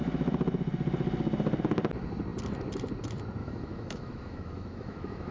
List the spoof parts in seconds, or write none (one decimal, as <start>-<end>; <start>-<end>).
3.4-5.3